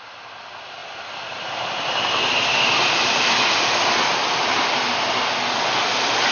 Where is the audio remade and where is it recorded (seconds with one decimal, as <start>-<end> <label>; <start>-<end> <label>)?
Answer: 0.0-6.3 recorded

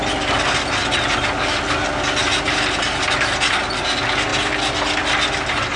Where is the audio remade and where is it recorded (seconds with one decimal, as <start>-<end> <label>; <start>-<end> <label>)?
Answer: 0.0-5.8 recorded

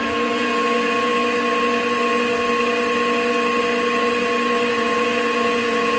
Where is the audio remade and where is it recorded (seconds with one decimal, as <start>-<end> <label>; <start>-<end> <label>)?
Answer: 0.0-1.1 remade; 1.1-4.7 recorded; 4.7-6.0 remade

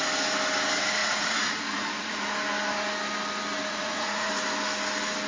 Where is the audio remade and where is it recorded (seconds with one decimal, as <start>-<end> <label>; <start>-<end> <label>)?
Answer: 0.0-1.0 recorded; 1.0-2.2 remade; 2.2-3.7 recorded; 3.7-4.3 remade; 4.3-5.3 recorded